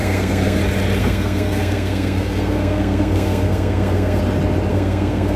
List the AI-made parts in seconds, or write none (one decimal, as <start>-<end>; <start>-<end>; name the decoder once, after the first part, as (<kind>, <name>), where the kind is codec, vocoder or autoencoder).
0.0-0.6 (codec, SNAC); 1.0-4.2; 4.7-5.4